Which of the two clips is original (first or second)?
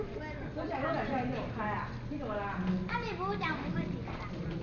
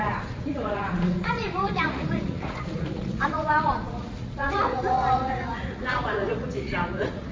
first